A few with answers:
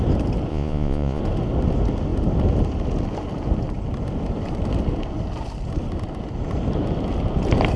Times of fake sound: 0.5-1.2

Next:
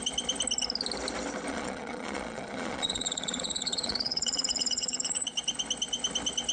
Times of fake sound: 1.5-5.4

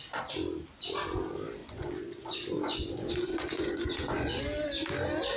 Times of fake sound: 1.6-4.4

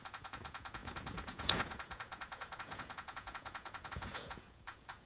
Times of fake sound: 0.0-5.1

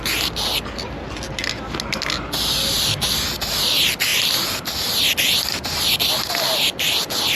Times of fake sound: none

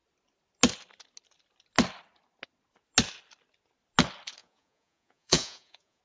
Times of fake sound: 4.4-6.0

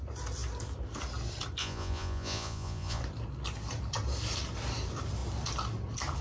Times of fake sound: 1.6-3.0

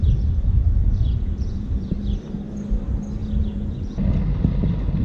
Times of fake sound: 0.0-1.9; 3.2-4.0